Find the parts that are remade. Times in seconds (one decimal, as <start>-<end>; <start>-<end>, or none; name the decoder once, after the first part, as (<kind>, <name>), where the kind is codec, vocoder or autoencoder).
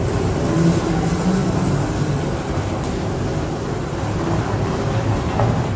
none